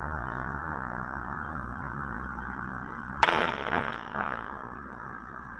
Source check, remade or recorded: remade